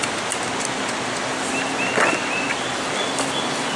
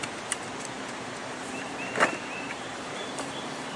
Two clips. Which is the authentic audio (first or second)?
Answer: first